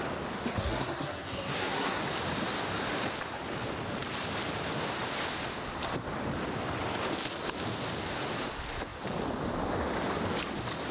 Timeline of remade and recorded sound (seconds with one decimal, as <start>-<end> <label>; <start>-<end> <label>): 0.0-0.5 recorded; 0.5-2.0 remade; 2.0-10.9 recorded